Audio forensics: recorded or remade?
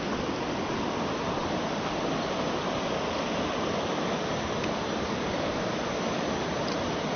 recorded